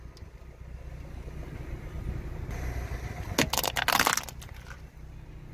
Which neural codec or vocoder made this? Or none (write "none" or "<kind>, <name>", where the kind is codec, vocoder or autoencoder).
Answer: none